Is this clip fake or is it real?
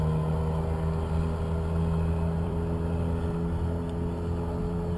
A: fake